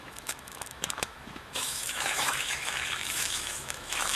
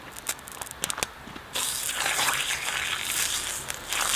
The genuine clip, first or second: second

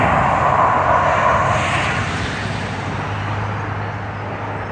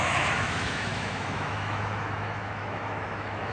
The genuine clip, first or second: first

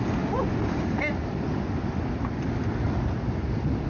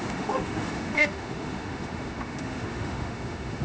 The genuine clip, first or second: first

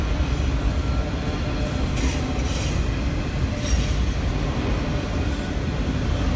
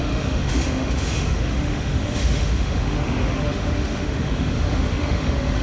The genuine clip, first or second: first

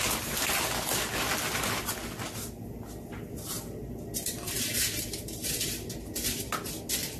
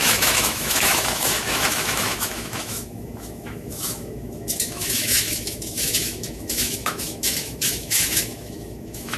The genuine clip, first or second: first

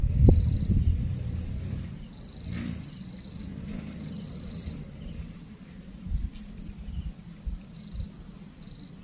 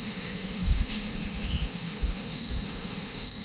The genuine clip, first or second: first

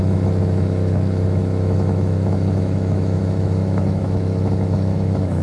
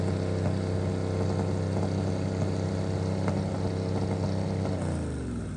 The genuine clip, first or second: second